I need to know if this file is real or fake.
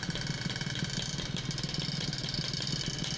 real